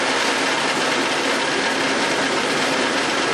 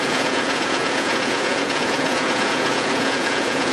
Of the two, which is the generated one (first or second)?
second